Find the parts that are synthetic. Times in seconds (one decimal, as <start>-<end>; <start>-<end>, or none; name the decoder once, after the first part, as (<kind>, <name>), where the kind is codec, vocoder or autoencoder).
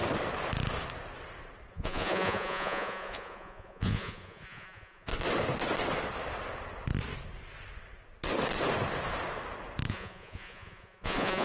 1.7-5.1 (vocoder, Vocos); 9.9-11.4